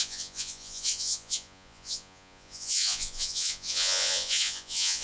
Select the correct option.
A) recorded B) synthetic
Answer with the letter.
B